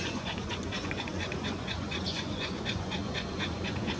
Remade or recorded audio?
remade